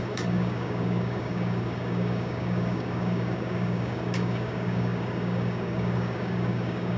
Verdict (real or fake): fake